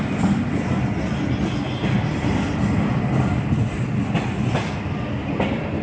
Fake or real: real